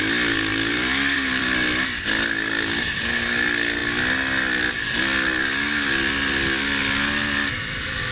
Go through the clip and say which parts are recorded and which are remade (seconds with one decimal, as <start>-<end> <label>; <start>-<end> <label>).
0.0-0.5 recorded; 0.5-1.8 remade; 1.8-8.1 recorded